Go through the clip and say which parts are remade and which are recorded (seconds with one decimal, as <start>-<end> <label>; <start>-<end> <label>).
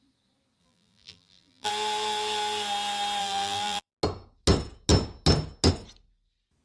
0.0-0.6 recorded; 0.6-1.7 remade; 1.7-3.2 recorded; 3.2-3.9 remade; 3.9-6.6 recorded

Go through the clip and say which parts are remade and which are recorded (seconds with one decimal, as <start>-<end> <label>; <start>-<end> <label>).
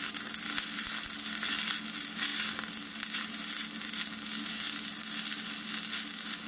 0.0-6.5 recorded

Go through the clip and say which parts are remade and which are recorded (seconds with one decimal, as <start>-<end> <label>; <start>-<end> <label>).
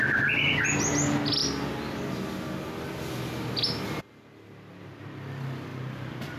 0.0-6.4 recorded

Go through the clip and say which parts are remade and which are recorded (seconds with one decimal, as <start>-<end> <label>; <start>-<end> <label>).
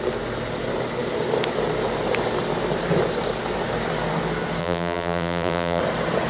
0.0-4.6 recorded; 4.6-5.8 remade; 5.8-6.3 recorded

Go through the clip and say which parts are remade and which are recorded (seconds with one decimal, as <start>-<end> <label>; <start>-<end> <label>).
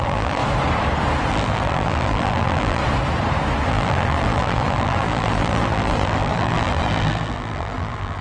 0.0-0.4 remade; 0.4-1.3 recorded; 1.3-2.8 remade; 2.8-3.7 recorded; 3.7-8.2 remade